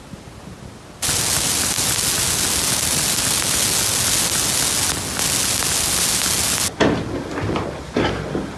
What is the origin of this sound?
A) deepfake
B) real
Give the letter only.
B